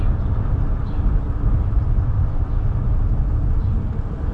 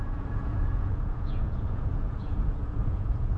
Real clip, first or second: first